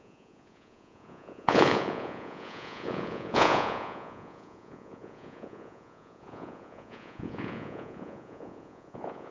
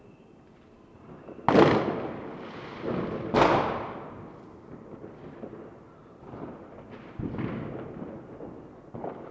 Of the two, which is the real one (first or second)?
second